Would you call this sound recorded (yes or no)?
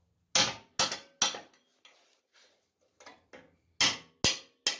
yes